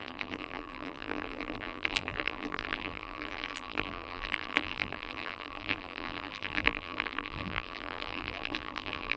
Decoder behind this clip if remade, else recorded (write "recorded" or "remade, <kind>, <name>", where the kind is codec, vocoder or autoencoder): remade, vocoder, BigVGAN v2